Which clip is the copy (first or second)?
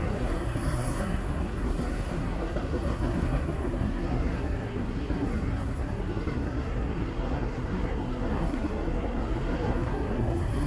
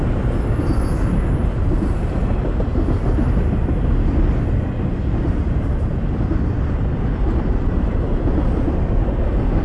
first